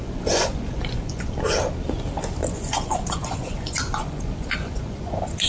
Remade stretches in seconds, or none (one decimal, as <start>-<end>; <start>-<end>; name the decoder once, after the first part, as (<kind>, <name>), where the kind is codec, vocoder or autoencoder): 0.0-1.3 (vocoder, Vocos); 2.4-5.5